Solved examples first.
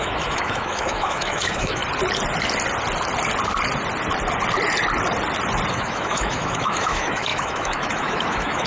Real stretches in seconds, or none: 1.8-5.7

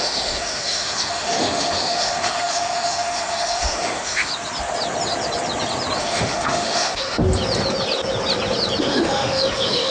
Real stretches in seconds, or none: 4.3-6.0; 7.2-8.8

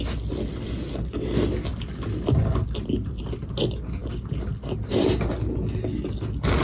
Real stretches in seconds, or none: 0.0-6.6

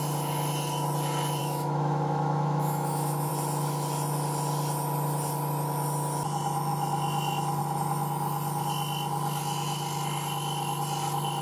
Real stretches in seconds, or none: 0.0-1.4; 3.3-11.4

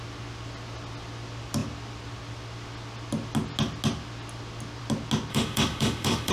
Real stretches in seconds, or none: 0.0-5.3

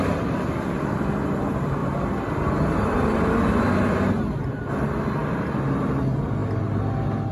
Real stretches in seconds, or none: 0.0-7.3

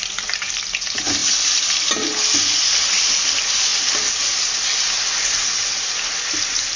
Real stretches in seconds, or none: 0.0-6.8

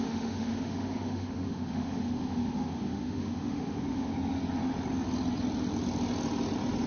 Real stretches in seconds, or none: 4.1-6.9